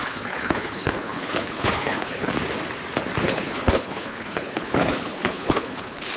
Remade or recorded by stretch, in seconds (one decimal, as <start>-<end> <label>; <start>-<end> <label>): 0.0-2.3 remade; 2.3-3.2 recorded; 3.2-6.2 remade